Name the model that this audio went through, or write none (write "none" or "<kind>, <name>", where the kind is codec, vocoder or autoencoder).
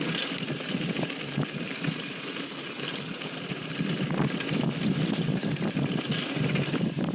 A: none